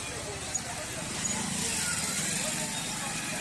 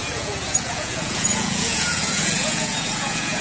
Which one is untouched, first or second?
first